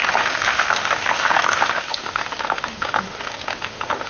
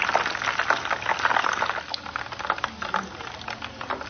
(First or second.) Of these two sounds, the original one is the second